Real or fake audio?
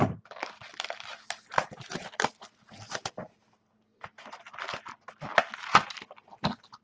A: real